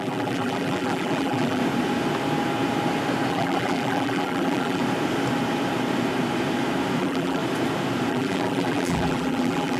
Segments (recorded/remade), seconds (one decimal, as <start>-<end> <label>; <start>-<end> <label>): 0.0-1.6 remade; 1.6-3.3 recorded; 3.3-4.8 remade; 4.8-7.0 recorded; 7.0-7.4 remade; 7.4-8.1 recorded; 8.1-9.8 remade